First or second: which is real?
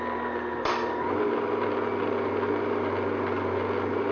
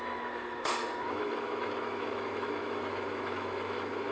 first